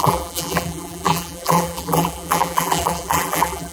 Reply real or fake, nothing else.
fake